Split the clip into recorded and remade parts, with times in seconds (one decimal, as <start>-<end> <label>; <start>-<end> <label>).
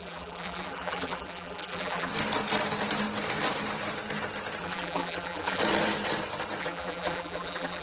0.0-2.1 remade; 2.1-4.6 recorded; 4.6-5.6 remade; 5.6-6.6 recorded; 6.6-7.8 remade